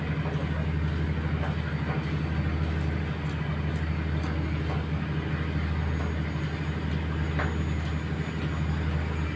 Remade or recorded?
recorded